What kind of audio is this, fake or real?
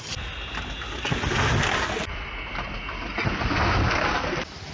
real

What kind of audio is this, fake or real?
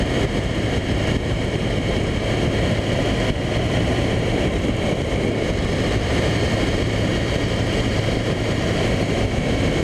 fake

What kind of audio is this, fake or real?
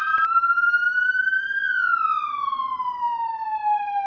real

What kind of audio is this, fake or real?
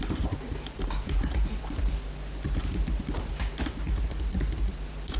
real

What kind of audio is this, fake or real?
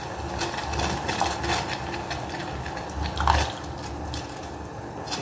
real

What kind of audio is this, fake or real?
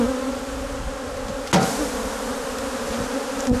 real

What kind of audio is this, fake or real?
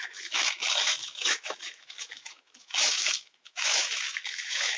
fake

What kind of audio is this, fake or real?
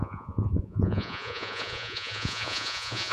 fake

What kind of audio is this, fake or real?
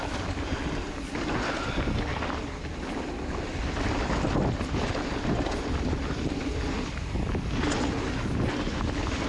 real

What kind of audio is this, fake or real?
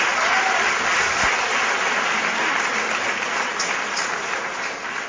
real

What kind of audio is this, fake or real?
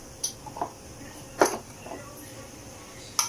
real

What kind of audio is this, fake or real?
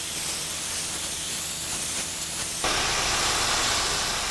real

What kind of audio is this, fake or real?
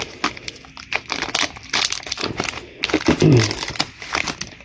real